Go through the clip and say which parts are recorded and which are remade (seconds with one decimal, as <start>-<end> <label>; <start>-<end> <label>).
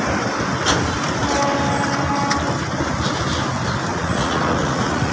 0.0-3.9 recorded; 3.9-5.1 remade